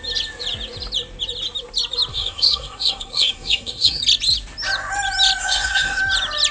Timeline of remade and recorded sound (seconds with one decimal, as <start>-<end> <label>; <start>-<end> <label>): 0.0-2.1 recorded; 2.1-4.0 remade; 4.0-5.4 recorded; 5.4-6.0 remade; 6.0-6.5 recorded

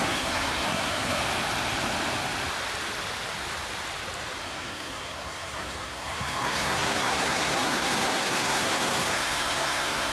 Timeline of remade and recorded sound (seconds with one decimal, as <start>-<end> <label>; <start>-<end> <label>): 0.0-1.2 remade; 1.2-4.4 recorded; 4.4-10.1 remade

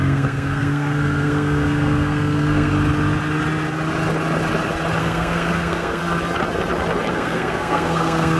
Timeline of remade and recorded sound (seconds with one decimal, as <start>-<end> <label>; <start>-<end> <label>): 0.0-2.7 remade; 2.7-5.0 recorded; 5.0-6.0 remade; 6.0-7.1 recorded; 7.1-8.4 remade

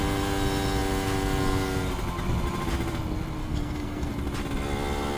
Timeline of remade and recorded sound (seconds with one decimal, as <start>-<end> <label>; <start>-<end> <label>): 0.0-3.4 recorded; 3.4-4.1 remade; 4.1-5.2 recorded

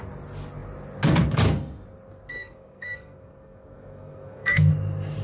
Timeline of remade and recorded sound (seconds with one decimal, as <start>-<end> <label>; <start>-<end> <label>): 0.0-2.3 recorded; 2.3-4.7 remade; 4.7-5.2 recorded

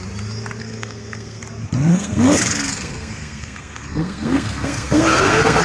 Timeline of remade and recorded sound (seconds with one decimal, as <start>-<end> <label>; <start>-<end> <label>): 0.0-0.6 recorded; 0.6-1.4 remade; 1.4-1.9 recorded; 1.9-5.6 remade